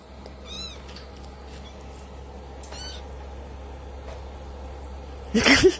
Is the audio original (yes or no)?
yes